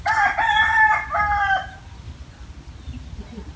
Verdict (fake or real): real